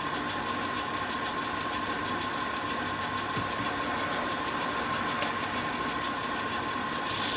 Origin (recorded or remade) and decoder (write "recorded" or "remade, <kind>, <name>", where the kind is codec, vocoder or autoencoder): recorded